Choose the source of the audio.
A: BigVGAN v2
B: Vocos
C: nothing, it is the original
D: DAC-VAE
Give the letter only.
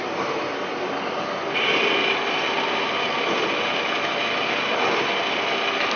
C